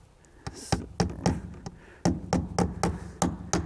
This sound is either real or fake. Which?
real